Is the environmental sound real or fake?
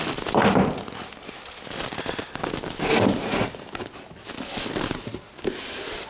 real